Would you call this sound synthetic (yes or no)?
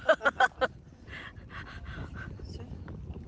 no